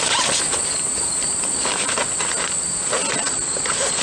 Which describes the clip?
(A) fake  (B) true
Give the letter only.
B